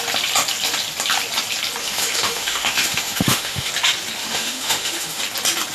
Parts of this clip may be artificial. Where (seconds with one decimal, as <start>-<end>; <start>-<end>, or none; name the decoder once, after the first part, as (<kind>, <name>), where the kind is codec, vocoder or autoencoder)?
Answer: 1.8-3.7 (autoencoder, DAC-VAE); 4.2-5.2